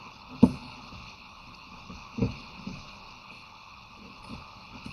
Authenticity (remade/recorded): remade